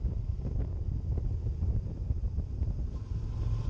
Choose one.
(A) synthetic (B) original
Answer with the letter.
B